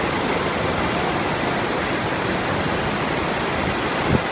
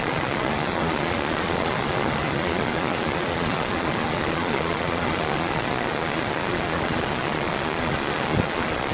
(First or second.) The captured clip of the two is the first